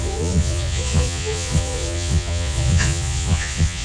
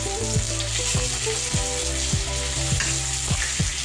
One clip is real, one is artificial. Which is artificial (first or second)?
first